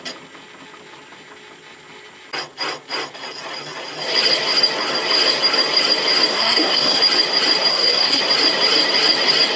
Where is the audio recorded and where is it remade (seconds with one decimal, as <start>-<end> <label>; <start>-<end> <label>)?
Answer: 0.0-6.3 recorded; 6.3-7.0 remade; 7.0-7.7 recorded; 7.7-8.2 remade; 8.2-9.6 recorded